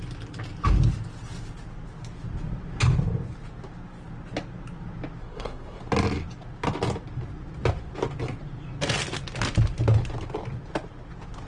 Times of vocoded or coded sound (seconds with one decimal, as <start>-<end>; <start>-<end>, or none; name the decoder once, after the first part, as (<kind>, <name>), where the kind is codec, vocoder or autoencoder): 5.2-5.8 (codec, SNAC)